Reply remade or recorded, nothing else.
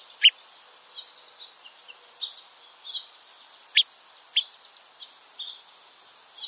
recorded